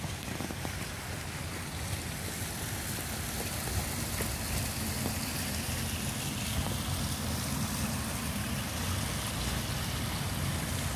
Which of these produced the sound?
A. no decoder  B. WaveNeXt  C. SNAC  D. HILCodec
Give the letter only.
A